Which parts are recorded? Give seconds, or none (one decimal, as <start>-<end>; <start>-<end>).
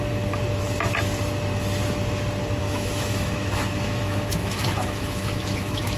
0.0-2.6